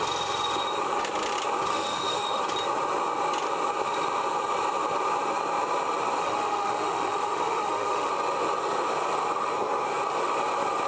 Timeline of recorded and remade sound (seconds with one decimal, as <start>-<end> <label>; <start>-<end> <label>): 0.0-1.7 recorded; 1.7-2.4 remade; 2.4-6.2 recorded; 6.2-8.1 remade; 8.1-10.9 recorded